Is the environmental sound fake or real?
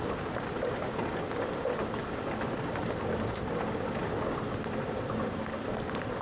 real